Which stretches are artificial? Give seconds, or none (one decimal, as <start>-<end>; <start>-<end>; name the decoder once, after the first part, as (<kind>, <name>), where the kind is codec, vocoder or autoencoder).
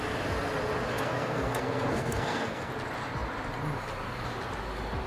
0.9-2.7 (codec, SNAC)